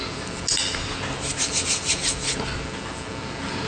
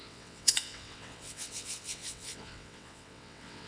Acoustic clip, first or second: first